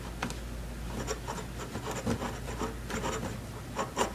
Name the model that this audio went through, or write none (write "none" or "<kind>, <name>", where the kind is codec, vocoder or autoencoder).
none